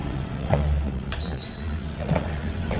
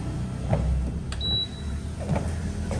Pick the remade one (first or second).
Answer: first